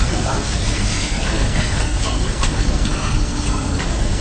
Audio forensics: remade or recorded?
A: remade